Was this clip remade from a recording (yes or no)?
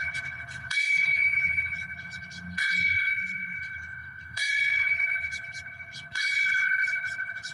yes